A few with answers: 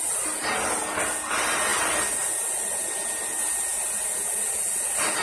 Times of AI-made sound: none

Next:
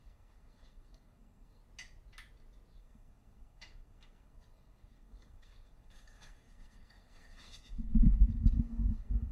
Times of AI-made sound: 0.0-1.6 (codec, SNAC); 2.8-9.3

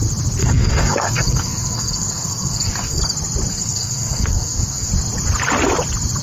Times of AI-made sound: 0.4-3.0 (codec, SNAC); 3.5-4.9

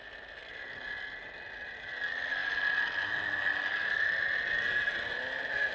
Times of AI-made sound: none

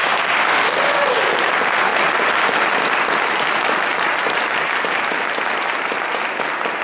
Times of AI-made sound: 0.0-1.2 (autoencoder, DAC-VAE)

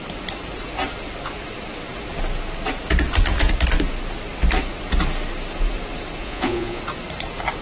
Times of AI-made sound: 6.2-6.8 (vocoder, Vocos)

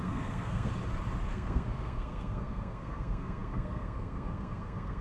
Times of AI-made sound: 0.0-0.7 (codec, SNAC); 1.3-5.0